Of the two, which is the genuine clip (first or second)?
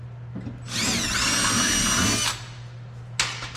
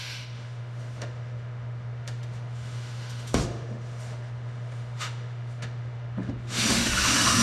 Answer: first